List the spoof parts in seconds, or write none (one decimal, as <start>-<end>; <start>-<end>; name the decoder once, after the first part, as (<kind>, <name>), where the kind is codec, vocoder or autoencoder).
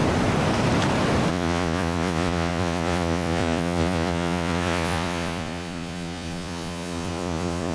1.3-7.7 (vocoder, Vocos)